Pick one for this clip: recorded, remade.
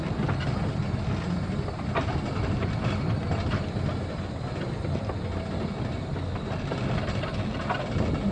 recorded